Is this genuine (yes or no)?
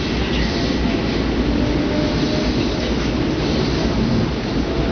yes